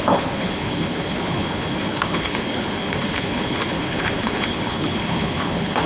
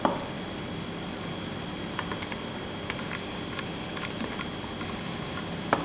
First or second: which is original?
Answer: second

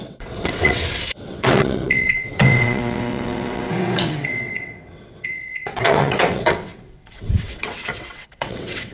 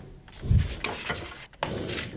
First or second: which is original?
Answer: second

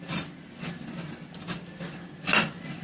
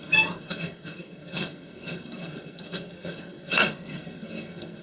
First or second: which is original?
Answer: first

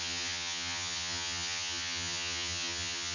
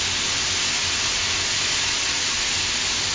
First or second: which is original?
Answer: second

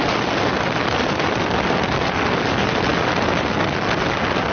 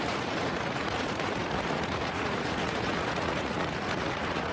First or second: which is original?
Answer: first